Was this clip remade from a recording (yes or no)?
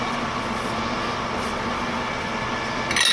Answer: no